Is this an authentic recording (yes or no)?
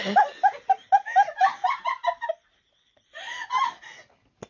yes